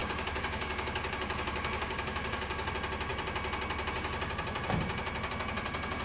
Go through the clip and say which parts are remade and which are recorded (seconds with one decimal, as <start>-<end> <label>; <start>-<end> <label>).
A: 0.0-2.7 remade; 2.7-6.0 recorded